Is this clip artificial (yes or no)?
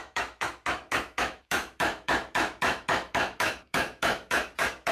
yes